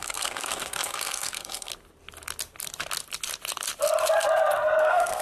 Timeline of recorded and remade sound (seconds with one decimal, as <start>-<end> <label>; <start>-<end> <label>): 0.0-1.7 remade; 1.7-4.8 recorded; 4.8-5.2 remade